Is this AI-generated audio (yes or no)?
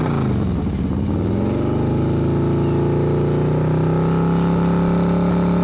no